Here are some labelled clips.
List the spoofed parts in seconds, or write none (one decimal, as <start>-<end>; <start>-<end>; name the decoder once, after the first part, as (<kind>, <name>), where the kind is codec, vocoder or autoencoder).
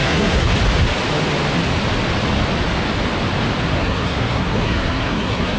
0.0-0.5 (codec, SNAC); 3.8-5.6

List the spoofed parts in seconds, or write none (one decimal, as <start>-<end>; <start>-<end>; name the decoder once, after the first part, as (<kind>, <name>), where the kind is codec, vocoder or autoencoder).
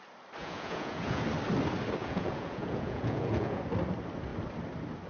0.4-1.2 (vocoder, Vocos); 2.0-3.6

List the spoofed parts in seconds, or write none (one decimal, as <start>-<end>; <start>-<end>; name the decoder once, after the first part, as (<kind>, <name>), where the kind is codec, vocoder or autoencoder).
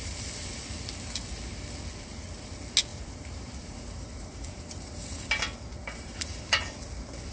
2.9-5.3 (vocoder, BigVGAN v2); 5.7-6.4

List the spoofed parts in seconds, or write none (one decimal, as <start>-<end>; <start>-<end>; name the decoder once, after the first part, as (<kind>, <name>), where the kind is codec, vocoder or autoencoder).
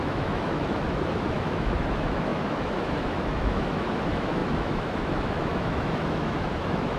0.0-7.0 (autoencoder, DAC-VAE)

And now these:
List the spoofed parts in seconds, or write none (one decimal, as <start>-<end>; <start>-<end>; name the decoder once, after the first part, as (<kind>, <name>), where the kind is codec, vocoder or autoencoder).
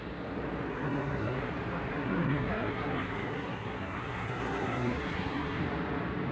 0.7-1.5 (codec, SNAC); 1.9-5.6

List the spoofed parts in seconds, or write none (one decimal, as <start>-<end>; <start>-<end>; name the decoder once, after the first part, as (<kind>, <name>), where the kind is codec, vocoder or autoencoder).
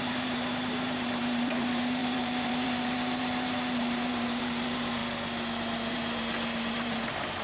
0.0-5.0 (vocoder, BigVGAN v2); 5.9-7.4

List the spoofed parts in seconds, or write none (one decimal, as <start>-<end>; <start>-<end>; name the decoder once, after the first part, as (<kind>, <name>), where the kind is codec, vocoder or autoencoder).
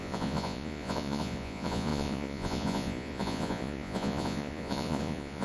0.0-5.4 (vocoder, Vocos)